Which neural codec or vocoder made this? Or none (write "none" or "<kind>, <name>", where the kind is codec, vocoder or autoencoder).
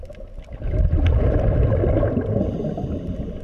none